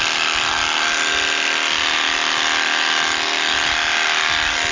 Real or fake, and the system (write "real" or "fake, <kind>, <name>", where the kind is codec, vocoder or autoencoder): real